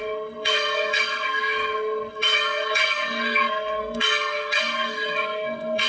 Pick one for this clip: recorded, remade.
remade